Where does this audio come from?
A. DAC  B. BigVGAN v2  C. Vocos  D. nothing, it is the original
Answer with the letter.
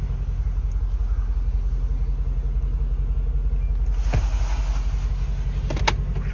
D